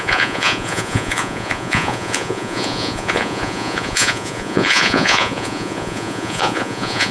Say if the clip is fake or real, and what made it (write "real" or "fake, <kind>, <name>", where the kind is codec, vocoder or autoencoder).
fake, vocoder, Vocos